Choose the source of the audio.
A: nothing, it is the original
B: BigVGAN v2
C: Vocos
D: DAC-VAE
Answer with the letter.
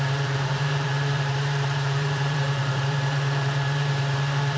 B